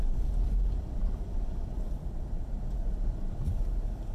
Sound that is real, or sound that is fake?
fake